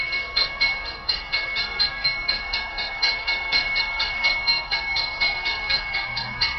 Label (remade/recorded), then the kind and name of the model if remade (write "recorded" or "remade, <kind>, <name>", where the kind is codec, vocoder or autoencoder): remade, codec, SNAC